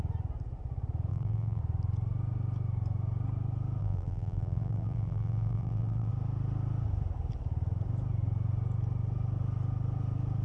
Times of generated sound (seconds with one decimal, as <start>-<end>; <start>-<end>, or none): 1.1-1.6; 3.8-6.1